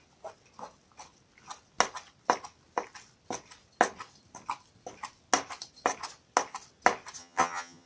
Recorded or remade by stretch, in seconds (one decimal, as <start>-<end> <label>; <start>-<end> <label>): 0.0-7.2 recorded; 7.2-7.9 remade